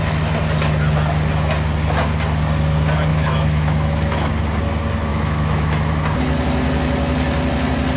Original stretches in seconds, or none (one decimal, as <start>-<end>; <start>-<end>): 0.0-3.1; 4.3-5.1; 5.9-8.0